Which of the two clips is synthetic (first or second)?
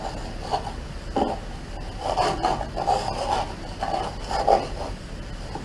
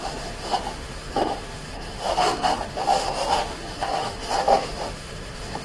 second